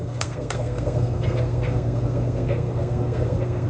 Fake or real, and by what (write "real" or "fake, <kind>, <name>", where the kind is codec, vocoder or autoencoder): fake, codec, SNAC